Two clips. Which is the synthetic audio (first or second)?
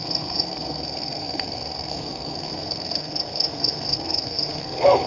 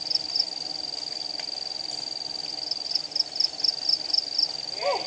first